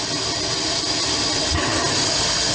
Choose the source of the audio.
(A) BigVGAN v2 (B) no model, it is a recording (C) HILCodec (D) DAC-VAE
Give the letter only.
B